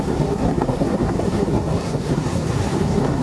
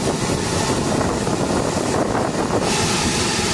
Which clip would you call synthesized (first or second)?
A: first